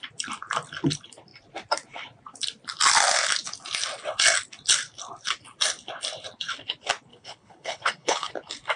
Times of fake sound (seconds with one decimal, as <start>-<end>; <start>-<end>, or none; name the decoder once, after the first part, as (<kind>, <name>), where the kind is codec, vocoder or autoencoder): 7.1-8.3 (codec, HILCodec)